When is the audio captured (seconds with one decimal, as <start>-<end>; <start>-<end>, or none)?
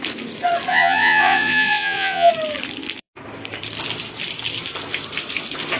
0.0-0.7; 2.3-5.8